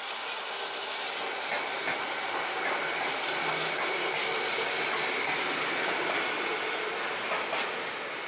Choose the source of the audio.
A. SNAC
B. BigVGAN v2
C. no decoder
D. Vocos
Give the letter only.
C